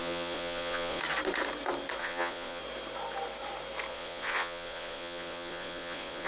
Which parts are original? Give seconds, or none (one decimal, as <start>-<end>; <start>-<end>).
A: 1.0-2.0; 2.6-3.9